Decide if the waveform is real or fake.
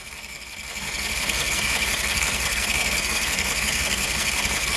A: fake